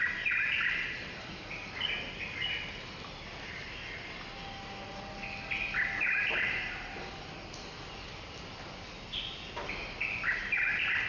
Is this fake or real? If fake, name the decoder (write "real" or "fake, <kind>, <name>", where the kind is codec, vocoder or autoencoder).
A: real